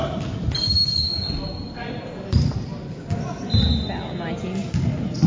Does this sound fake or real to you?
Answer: real